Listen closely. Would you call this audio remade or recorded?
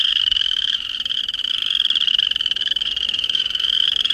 remade